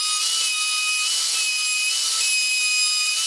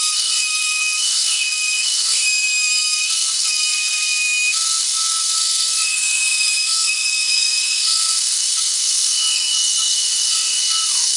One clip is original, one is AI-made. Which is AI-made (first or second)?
second